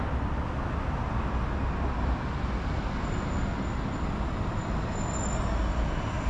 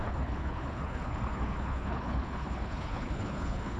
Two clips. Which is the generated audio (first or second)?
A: second